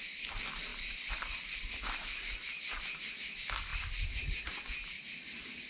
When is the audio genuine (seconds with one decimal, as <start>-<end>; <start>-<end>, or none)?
0.0-0.7; 1.8-3.7; 4.2-5.7